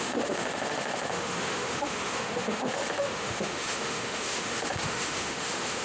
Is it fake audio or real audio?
fake